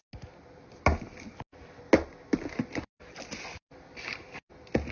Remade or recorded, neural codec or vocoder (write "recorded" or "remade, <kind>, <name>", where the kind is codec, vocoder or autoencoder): recorded